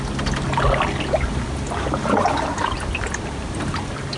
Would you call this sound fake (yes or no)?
no